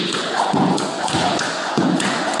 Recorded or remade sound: remade